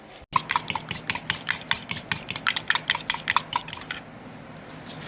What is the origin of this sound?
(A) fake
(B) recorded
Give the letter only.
B